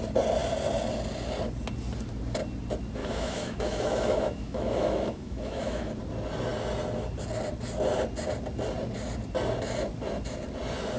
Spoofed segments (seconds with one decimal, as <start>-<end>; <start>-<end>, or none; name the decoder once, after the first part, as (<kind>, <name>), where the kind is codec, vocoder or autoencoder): 3.0-5.9 (autoencoder, DAC-VAE)